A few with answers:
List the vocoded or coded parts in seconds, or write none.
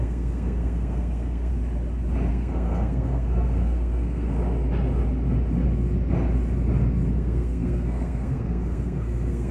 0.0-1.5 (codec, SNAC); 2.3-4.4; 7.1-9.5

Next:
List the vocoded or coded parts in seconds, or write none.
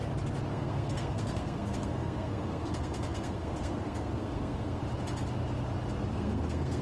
0.5-4.8 (codec, SNAC); 6.1-6.8